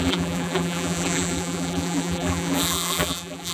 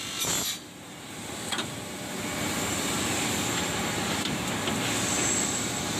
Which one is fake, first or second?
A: first